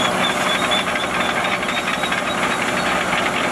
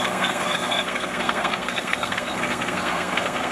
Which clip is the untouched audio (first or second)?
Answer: first